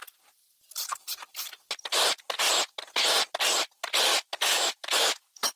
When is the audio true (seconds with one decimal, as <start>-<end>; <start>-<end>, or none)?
0.0-4.1